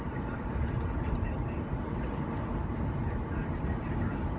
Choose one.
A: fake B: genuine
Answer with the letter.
A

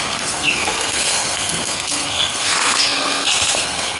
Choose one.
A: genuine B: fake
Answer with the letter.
B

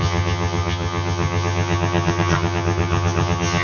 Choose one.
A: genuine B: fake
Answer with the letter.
B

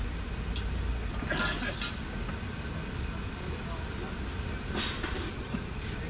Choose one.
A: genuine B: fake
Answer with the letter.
A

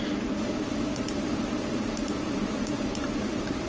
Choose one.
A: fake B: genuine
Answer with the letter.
A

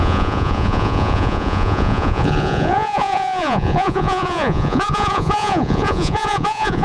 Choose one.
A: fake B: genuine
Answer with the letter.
A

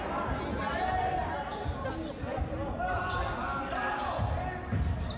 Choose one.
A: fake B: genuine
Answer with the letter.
B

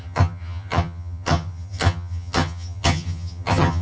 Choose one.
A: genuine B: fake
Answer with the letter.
B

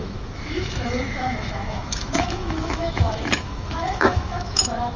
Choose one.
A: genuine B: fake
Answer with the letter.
B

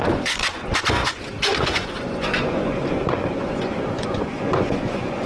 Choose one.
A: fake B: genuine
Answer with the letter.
A